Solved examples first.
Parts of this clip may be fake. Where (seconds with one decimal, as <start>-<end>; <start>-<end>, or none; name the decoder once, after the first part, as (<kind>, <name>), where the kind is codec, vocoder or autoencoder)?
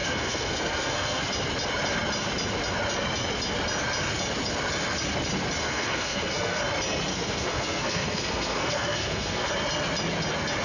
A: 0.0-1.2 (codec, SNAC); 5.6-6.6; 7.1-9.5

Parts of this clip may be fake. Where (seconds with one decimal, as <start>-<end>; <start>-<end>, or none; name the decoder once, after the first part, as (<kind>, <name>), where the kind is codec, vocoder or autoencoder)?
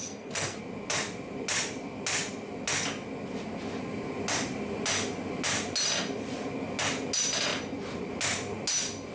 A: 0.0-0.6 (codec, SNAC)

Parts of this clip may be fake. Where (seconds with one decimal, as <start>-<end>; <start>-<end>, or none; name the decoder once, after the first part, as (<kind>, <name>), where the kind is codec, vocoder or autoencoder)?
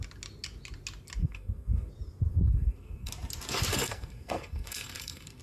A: 1.2-1.9 (codec, SNAC); 2.3-3.1; 3.7-5.4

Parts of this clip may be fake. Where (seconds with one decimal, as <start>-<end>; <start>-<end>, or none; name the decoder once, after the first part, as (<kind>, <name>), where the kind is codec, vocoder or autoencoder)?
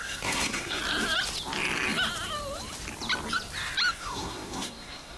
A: 0.0-0.8 (codec, SNAC); 3.9-5.2